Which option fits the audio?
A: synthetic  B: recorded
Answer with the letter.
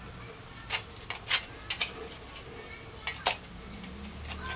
B